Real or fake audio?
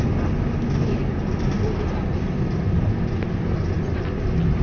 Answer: real